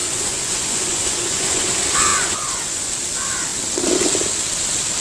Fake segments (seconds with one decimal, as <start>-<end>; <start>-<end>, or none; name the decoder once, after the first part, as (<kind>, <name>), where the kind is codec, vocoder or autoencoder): 0.0-1.7 (vocoder, Vocos); 2.1-2.9